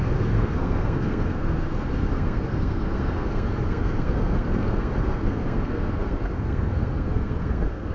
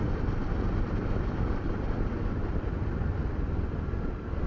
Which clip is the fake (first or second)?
first